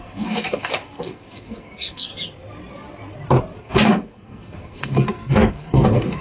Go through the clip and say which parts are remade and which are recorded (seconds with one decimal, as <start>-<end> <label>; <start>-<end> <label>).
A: 0.0-2.1 remade; 2.1-3.6 recorded; 3.6-6.2 remade